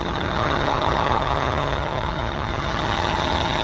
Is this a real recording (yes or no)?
no